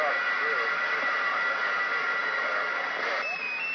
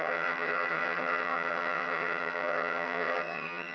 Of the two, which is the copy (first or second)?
second